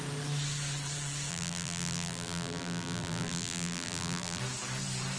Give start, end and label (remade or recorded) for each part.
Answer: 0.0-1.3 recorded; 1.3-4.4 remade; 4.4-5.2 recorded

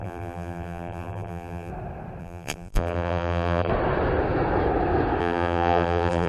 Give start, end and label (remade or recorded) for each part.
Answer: 0.0-1.7 remade; 1.7-2.2 recorded; 2.2-3.7 remade; 3.7-5.2 recorded; 5.2-6.3 remade

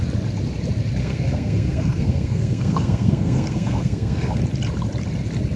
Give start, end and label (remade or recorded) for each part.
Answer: 0.0-1.0 recorded; 1.0-4.4 remade; 4.4-5.6 recorded

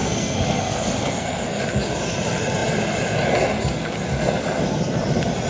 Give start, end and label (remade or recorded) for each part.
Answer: 0.0-1.6 remade; 1.6-5.5 recorded

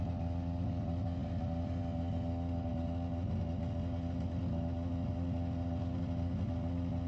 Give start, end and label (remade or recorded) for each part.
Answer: 0.0-7.1 recorded

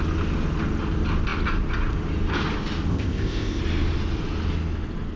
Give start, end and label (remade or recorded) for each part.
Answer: 0.0-2.9 recorded; 2.9-3.6 remade; 3.6-5.2 recorded

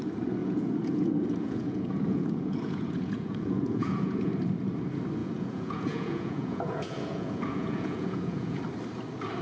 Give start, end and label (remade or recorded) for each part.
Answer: 0.0-0.4 recorded; 0.4-4.3 remade; 4.3-5.2 recorded; 5.2-8.6 remade; 8.6-9.4 recorded